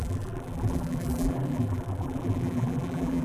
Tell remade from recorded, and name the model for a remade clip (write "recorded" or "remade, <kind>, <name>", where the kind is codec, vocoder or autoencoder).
remade, vocoder, BigVGAN v2